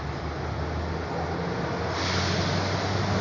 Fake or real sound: real